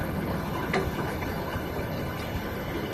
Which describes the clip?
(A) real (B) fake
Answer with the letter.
B